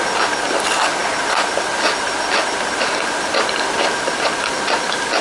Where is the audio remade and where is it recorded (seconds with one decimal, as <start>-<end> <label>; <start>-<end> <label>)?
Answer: 0.0-5.2 recorded